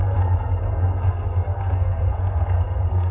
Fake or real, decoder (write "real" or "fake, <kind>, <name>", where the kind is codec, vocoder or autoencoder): fake, codec, SNAC